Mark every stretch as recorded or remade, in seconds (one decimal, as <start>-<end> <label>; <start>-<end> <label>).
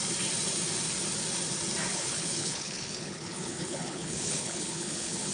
0.0-1.9 recorded; 1.9-5.3 remade